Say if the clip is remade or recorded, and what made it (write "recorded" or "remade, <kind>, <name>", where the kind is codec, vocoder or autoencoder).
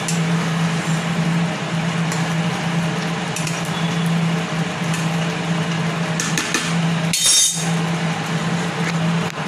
recorded